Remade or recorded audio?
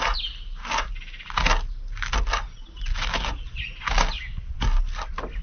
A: recorded